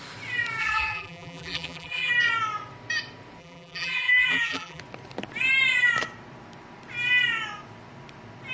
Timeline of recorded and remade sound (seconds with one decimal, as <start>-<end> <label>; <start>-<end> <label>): 0.0-0.6 recorded; 0.6-2.1 remade; 2.1-3.4 recorded; 3.4-4.8 remade; 4.8-8.5 recorded